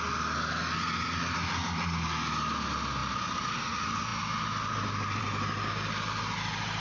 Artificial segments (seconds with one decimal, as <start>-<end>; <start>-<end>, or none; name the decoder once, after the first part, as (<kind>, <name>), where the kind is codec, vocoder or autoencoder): none